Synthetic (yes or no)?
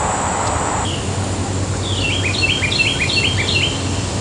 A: no